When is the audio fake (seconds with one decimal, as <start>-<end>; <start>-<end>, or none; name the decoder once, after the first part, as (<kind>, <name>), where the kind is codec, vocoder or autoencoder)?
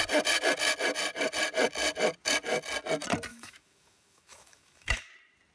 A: 3.3-5.1 (autoencoder, DAC-VAE)